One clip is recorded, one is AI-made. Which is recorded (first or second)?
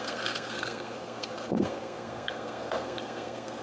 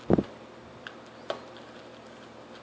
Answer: second